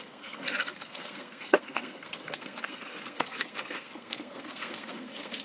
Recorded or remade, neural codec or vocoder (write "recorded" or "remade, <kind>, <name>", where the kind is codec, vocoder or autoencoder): remade, codec, SNAC